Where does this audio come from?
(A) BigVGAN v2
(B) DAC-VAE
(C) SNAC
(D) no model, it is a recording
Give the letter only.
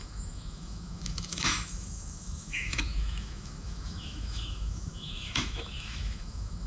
B